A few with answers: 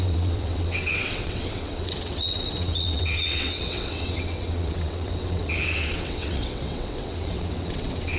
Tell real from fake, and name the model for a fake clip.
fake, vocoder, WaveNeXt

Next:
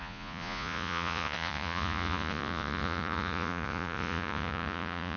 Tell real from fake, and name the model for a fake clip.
fake, vocoder, Vocos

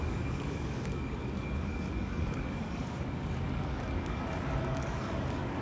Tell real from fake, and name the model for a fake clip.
fake, codec, DAC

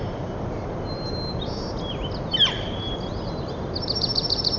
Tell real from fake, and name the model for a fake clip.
real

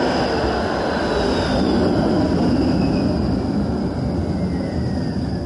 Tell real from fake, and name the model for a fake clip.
real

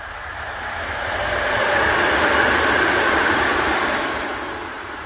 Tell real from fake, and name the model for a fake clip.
fake, vocoder, BigVGAN v2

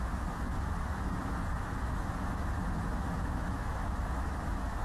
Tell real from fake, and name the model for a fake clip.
fake, autoencoder, DAC-VAE